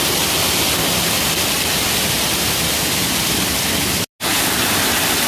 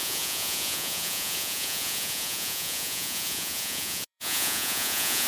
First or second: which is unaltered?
first